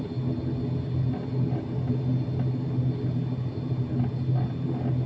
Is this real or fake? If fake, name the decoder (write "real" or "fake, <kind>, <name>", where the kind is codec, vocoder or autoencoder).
real